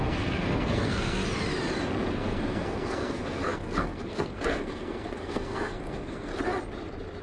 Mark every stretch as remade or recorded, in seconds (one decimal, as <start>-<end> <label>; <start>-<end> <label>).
0.0-1.2 remade; 1.2-2.1 recorded; 2.1-6.3 remade; 6.3-7.2 recorded